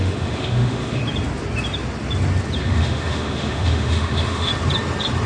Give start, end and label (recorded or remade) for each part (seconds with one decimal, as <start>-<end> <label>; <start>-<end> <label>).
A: 0.0-1.0 remade; 1.0-2.6 recorded; 2.6-4.5 remade; 4.5-5.3 recorded